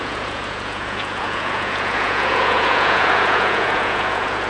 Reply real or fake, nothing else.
fake